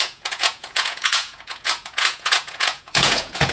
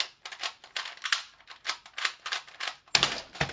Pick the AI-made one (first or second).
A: first